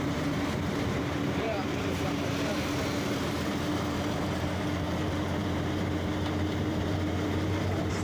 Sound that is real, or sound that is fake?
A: fake